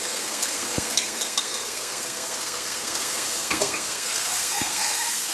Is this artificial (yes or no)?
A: yes